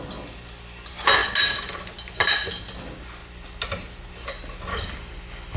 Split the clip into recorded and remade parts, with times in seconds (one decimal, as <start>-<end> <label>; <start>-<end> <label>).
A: 0.0-4.7 recorded; 4.7-5.6 remade